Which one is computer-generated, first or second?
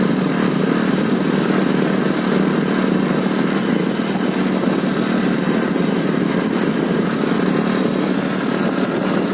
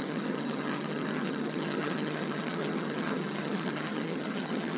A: second